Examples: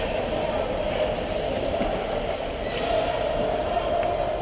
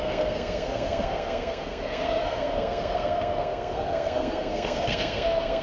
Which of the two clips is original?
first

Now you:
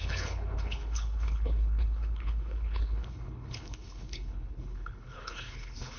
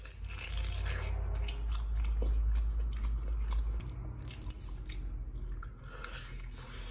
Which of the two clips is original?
second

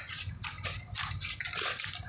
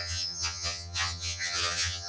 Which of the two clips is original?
first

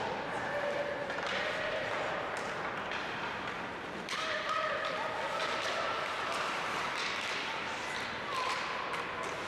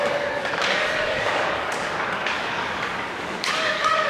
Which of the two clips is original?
first